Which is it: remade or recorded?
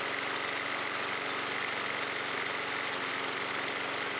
recorded